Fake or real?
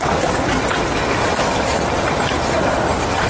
real